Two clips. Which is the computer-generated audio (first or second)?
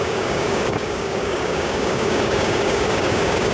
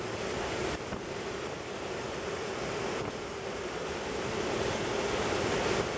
first